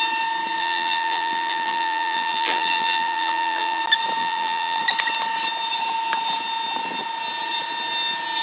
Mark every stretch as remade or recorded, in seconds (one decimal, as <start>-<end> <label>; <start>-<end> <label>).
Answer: 0.0-0.6 recorded; 0.6-3.8 remade; 3.8-4.2 recorded; 4.2-4.8 remade; 4.8-8.4 recorded